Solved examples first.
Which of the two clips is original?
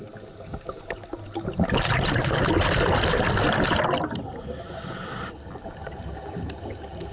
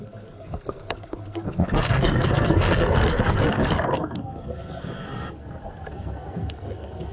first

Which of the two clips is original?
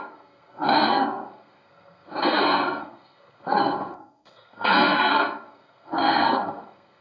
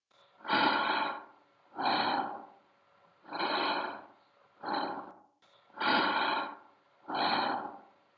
second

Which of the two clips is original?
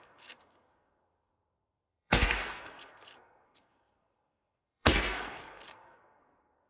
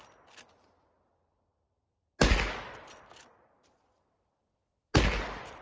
second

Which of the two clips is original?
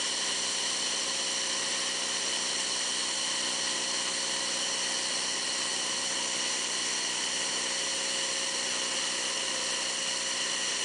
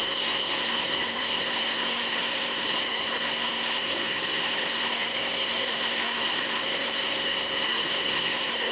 first